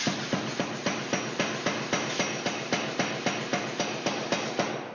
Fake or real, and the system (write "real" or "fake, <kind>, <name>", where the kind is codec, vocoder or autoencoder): real